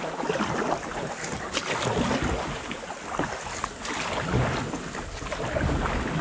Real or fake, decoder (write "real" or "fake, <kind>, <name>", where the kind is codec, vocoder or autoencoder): real